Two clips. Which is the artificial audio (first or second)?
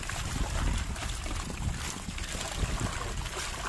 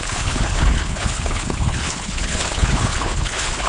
second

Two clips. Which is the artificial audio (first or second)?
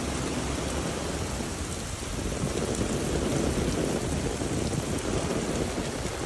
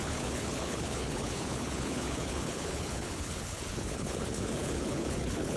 second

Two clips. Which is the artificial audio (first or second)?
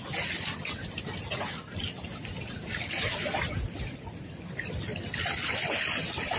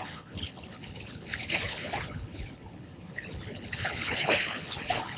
second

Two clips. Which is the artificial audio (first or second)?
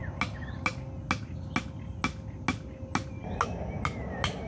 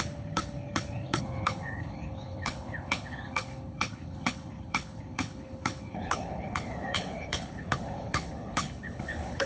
second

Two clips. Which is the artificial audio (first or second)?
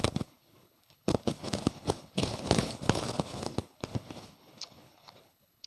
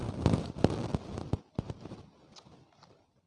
first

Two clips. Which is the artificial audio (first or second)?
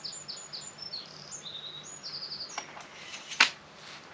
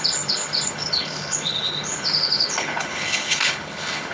second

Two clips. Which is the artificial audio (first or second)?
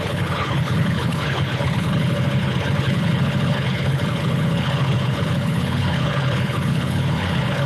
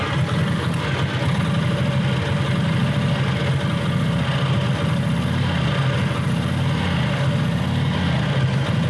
first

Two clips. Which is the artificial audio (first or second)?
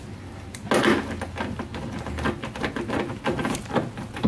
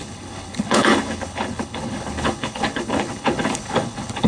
second